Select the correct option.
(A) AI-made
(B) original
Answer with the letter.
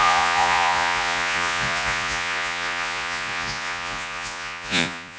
A